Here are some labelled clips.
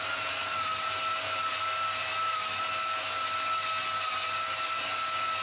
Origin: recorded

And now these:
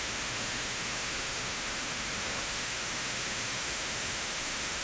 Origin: remade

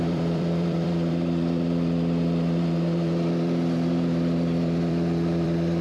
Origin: remade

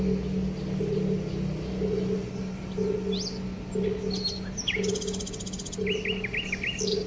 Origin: recorded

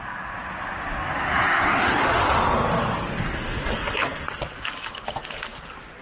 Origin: recorded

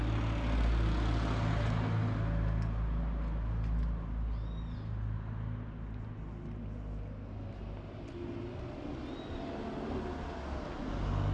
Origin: recorded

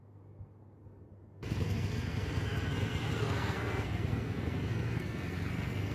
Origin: remade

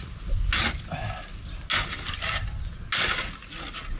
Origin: recorded